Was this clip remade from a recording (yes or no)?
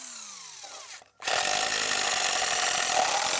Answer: no